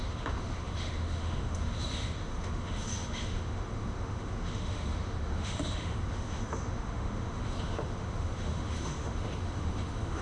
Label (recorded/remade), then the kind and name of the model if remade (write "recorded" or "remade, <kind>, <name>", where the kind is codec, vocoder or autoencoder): remade, autoencoder, DAC-VAE